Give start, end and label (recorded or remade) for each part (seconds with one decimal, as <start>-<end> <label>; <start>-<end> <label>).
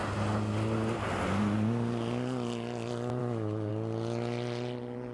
0.0-3.2 recorded; 3.2-3.7 remade; 3.7-5.1 recorded